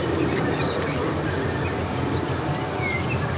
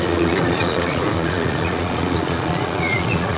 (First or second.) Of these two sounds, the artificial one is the second